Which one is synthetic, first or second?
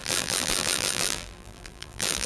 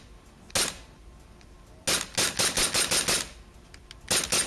first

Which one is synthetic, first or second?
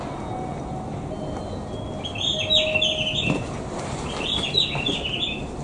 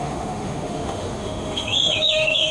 second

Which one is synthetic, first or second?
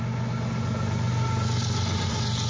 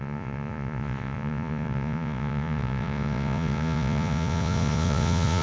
second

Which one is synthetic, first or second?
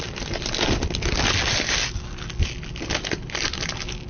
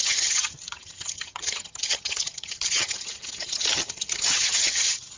second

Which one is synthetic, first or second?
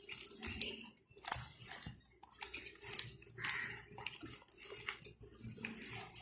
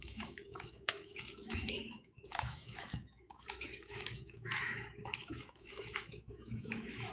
second